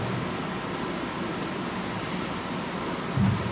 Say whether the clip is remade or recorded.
recorded